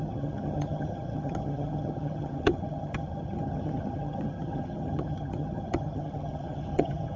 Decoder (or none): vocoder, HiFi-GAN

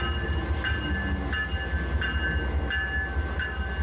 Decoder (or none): none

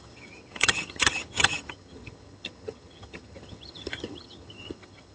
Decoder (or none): vocoder, HiFi-GAN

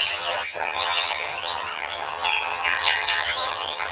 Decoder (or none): vocoder, HiFi-GAN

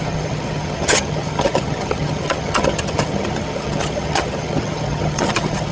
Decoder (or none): vocoder, HiFi-GAN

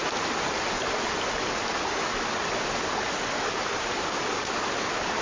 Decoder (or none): none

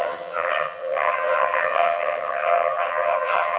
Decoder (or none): vocoder, HiFi-GAN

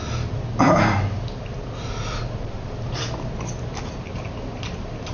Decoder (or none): none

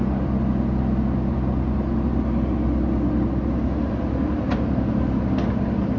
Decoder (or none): none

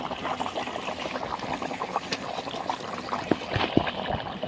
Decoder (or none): none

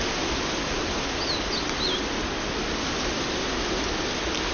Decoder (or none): none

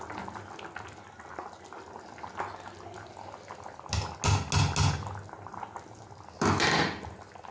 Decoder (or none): none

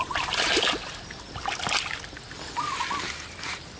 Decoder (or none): none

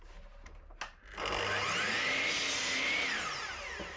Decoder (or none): none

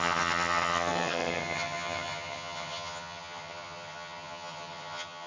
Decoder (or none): vocoder, HiFi-GAN